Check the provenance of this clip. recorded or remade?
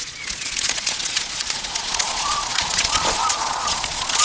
remade